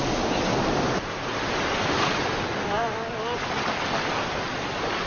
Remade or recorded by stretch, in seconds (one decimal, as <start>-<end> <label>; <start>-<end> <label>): 0.0-5.1 recorded